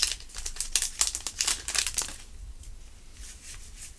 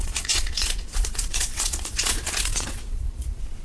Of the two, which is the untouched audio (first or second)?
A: first